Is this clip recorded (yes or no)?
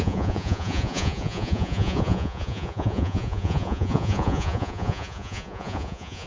no